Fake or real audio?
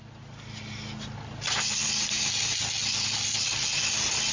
real